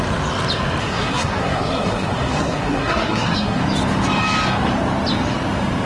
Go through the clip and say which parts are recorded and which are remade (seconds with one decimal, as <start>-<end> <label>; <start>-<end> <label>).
0.0-0.8 recorded; 0.8-3.6 remade; 3.6-5.9 recorded